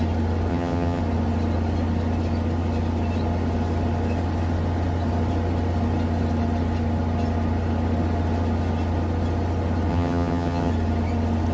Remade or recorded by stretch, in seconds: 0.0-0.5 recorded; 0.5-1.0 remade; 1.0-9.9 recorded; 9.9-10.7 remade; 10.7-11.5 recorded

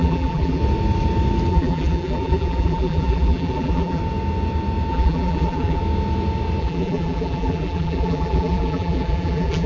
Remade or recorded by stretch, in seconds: 0.0-0.6 remade; 0.6-1.5 recorded; 1.5-4.0 remade; 4.0-4.9 recorded; 4.9-5.8 remade; 5.8-6.6 recorded; 6.6-9.7 remade

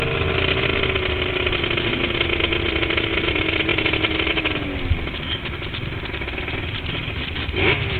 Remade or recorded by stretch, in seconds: 0.0-0.7 recorded; 0.7-2.1 remade; 2.1-7.0 recorded; 7.0-8.0 remade

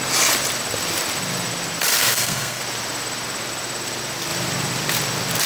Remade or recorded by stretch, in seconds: 0.0-2.0 recorded; 2.0-2.6 remade; 2.6-5.5 recorded

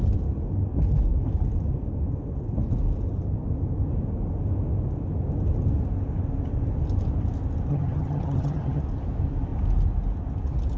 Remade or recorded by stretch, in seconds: 0.0-7.7 recorded; 7.7-8.8 remade; 8.8-10.8 recorded

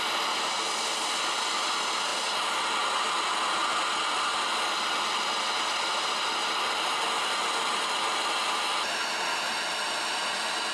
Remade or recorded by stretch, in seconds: 0.0-10.7 recorded